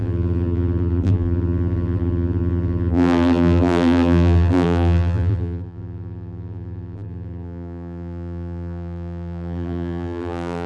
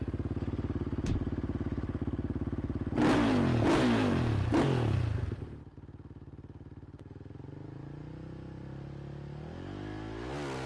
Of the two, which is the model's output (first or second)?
first